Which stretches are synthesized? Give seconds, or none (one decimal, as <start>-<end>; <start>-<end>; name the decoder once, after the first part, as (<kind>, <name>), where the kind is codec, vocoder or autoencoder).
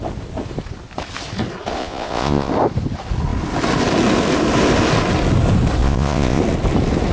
1.8-2.5 (vocoder, Vocos); 5.8-6.4